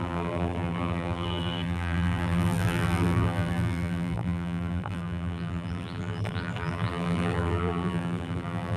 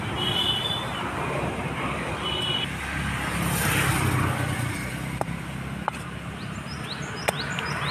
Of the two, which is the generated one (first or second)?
first